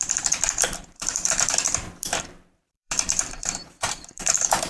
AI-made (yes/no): yes